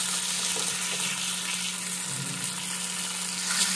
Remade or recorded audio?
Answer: recorded